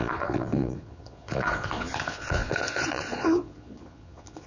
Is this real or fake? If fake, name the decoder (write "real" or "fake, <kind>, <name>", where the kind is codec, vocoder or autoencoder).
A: fake, vocoder, Vocos